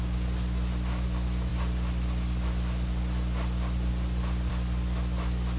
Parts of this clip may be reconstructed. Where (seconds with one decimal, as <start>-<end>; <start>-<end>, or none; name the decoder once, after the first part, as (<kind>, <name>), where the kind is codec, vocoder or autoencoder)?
none